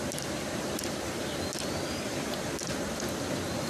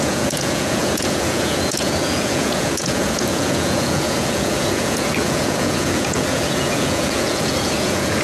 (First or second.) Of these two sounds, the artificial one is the second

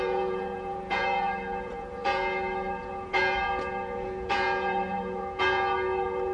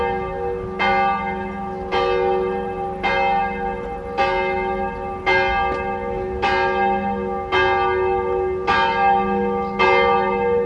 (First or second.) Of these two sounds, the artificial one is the first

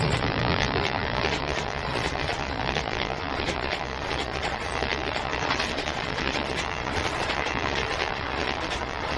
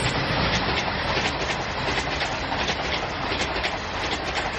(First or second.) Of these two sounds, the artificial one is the first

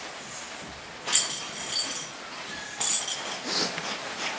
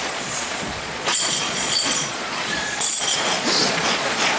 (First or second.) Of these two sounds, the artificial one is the second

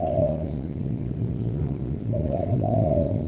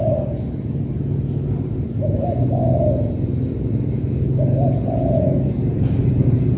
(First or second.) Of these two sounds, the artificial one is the first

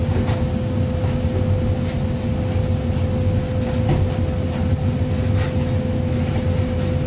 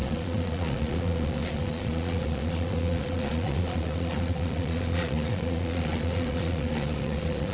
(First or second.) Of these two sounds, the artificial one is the second